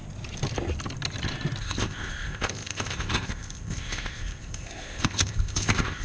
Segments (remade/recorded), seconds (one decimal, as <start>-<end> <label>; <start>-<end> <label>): 0.0-1.6 recorded; 1.6-6.0 remade